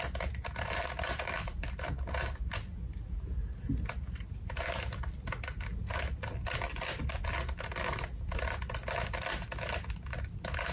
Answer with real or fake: real